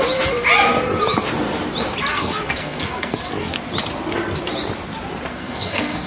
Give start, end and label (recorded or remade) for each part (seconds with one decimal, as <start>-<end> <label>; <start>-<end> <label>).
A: 0.0-2.1 recorded; 2.1-3.3 remade; 3.3-5.3 recorded; 5.3-6.1 remade